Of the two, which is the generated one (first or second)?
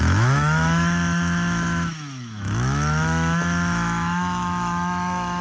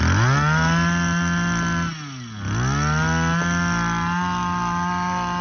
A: first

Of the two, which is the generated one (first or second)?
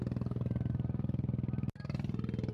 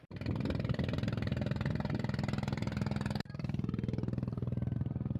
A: second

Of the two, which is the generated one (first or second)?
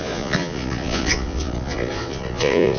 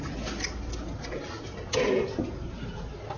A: first